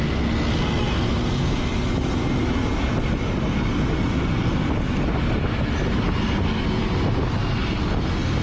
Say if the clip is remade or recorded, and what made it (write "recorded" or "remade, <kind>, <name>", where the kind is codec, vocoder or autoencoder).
recorded